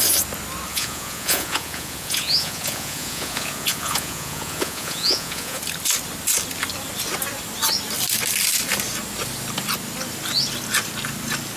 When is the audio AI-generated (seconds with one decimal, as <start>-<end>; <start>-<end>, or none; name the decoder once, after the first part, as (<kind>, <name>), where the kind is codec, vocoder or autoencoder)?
0.7-5.6 (vocoder, Vocos)